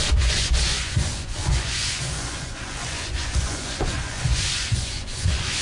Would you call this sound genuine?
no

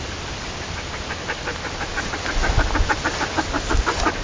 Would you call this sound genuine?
yes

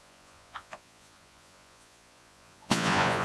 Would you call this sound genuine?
no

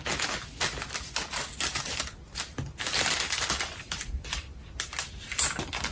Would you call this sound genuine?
yes